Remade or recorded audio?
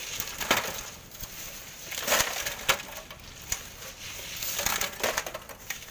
recorded